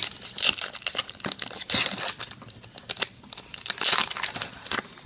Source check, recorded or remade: recorded